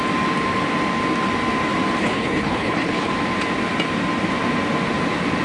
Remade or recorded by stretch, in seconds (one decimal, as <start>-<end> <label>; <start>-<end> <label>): 0.0-2.0 recorded; 2.0-3.1 remade; 3.1-5.4 recorded